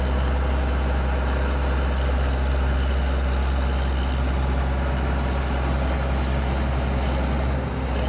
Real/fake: real